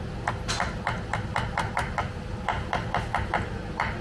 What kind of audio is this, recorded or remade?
recorded